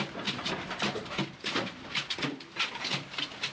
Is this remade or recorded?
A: recorded